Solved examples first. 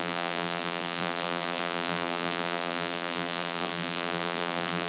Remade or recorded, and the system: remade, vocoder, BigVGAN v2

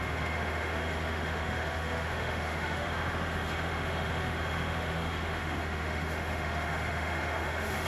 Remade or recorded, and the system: remade, autoencoder, DAC-VAE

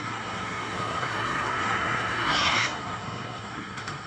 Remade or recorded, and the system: remade, codec, SNAC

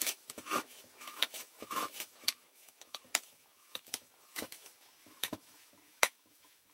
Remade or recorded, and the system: remade, autoencoder, DAC-VAE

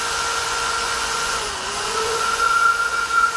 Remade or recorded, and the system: remade, vocoder, Vocos